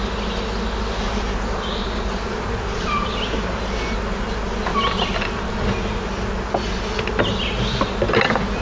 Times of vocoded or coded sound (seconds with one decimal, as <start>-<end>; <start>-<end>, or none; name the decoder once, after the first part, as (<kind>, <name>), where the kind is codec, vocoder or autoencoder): 1.8-3.2 (vocoder, BigVGAN v2); 4.7-5.6